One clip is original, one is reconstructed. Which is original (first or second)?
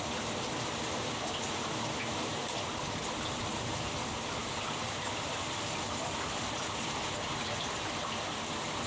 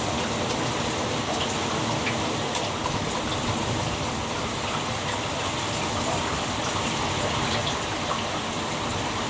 second